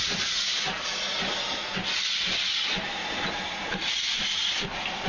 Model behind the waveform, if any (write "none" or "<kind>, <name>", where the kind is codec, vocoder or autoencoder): none